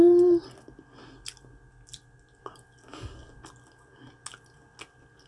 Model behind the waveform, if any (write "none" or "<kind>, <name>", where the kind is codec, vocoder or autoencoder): none